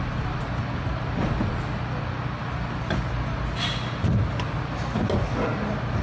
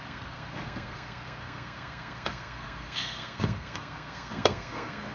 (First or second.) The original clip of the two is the first